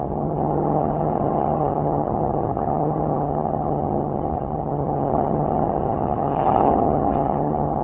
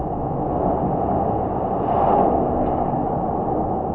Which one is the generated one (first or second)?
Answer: first